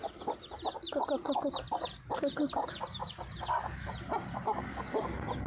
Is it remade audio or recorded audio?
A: recorded